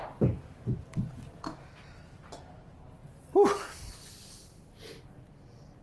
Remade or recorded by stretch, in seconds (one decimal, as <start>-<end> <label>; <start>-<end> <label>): 0.0-5.8 recorded